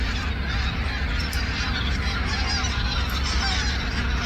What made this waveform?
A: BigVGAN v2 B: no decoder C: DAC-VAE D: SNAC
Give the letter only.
B